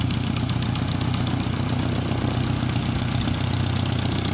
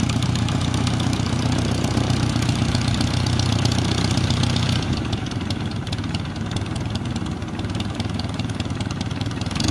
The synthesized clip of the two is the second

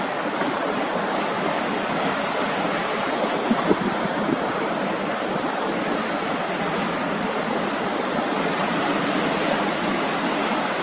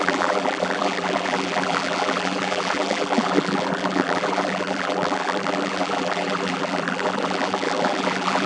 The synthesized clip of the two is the second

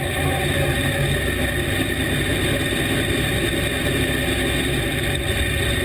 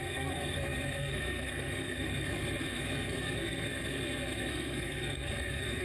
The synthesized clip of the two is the second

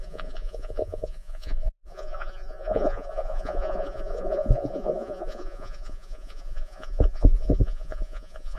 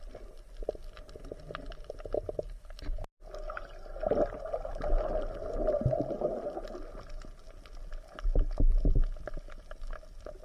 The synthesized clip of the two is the first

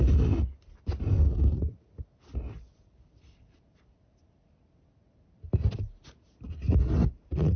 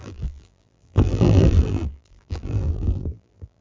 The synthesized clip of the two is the second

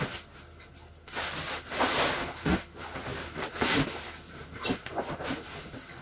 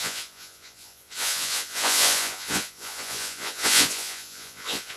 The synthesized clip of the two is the second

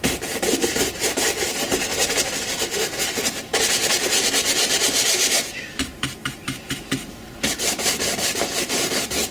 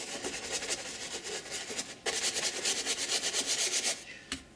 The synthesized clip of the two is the first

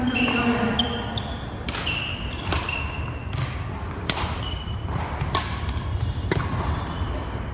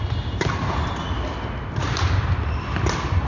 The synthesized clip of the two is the first